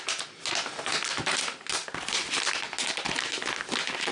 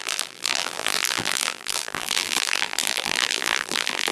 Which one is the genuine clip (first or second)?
first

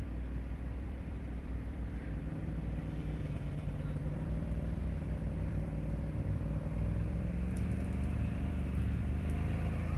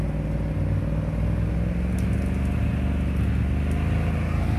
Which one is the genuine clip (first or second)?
second